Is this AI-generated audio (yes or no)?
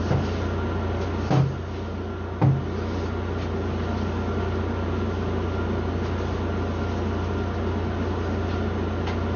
no